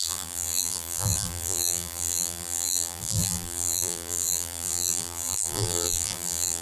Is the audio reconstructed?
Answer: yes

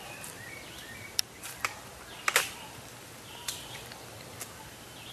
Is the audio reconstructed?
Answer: yes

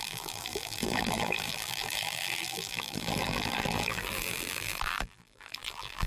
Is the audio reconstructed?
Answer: yes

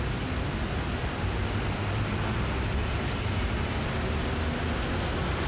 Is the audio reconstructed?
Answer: no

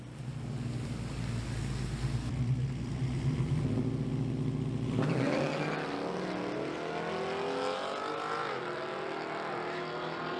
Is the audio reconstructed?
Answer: no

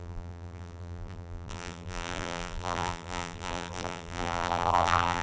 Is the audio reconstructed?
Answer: yes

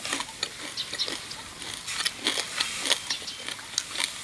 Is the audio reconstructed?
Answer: no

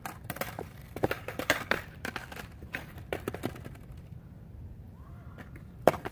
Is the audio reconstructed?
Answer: yes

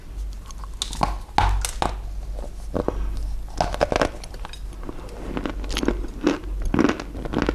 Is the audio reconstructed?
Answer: no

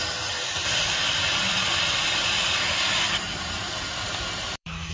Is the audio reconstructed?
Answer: yes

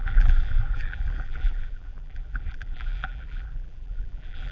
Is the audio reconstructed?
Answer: yes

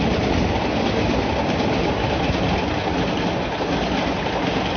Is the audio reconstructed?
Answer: no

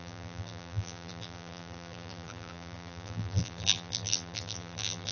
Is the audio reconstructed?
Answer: yes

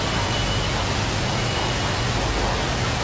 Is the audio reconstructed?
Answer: no